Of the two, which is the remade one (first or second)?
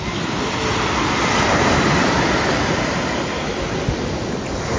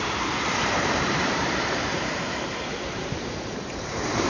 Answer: second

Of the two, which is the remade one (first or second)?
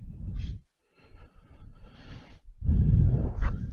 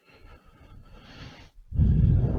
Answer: first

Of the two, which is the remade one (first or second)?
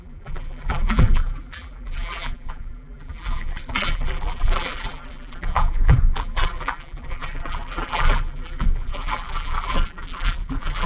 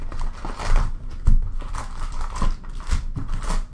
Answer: first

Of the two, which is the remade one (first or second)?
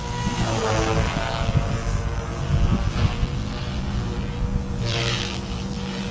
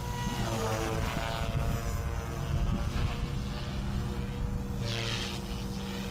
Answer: first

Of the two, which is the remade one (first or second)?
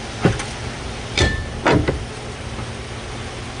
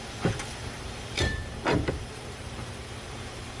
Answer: second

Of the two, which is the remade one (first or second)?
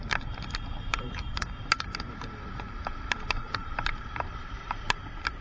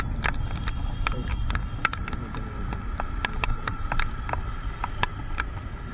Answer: first